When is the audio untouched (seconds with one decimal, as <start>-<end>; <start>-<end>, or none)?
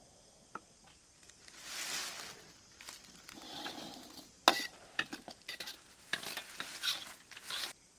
0.0-8.0